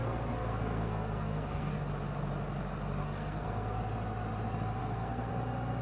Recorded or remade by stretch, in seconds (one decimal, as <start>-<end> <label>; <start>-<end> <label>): 0.0-1.7 remade; 1.7-3.0 recorded; 3.0-3.8 remade; 3.8-4.8 recorded; 4.8-5.3 remade; 5.3-5.8 recorded